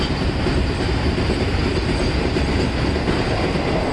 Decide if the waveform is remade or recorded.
recorded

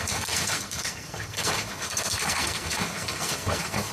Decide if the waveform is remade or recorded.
remade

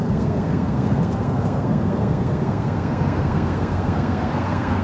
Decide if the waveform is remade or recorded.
remade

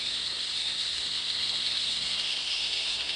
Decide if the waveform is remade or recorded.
remade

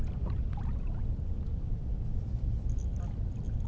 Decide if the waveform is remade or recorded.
recorded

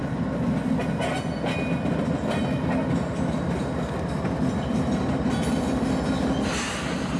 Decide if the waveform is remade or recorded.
recorded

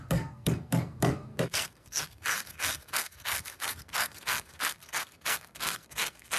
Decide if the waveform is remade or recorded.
remade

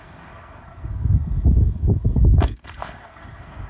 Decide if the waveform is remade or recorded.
remade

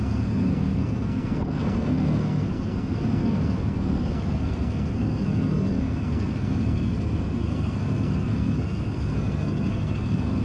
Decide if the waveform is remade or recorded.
remade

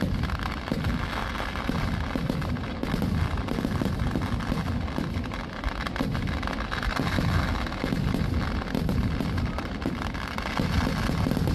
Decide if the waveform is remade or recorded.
recorded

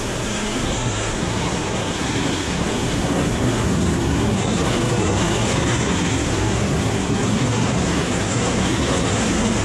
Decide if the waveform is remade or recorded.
remade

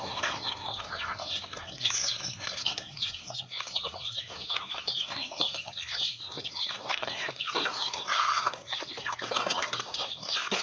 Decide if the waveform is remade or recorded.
remade